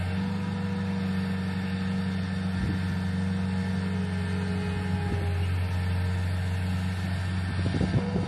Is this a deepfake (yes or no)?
no